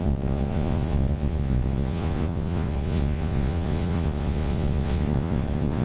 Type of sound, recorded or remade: remade